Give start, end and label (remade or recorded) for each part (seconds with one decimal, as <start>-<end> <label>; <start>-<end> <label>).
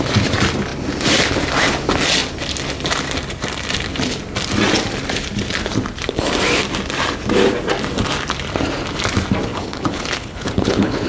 0.0-9.5 recorded; 9.5-11.1 remade